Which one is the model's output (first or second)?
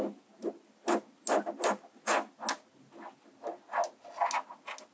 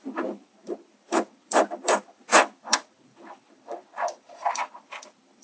second